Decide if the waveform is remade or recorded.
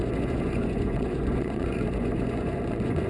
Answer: remade